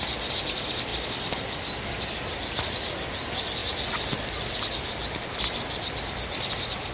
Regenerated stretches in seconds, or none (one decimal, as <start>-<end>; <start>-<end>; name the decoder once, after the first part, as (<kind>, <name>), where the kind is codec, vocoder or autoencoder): 0.9-1.8 (vocoder, BigVGAN v2); 3.6-4.8